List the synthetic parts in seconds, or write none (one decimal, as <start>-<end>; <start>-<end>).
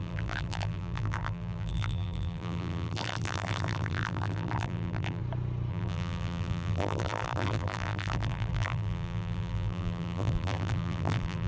0.0-5.2; 5.7-11.5